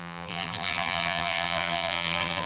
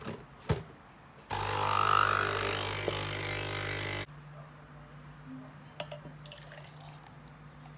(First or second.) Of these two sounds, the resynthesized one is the first